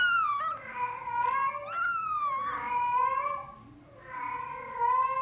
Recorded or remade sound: recorded